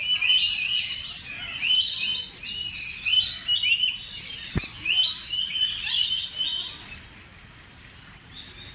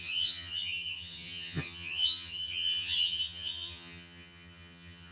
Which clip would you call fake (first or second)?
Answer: second